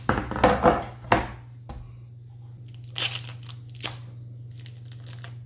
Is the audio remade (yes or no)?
no